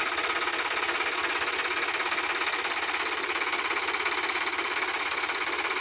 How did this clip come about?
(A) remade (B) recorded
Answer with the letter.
B